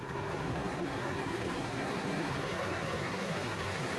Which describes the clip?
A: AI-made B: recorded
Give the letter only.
A